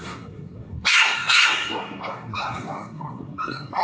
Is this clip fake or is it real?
fake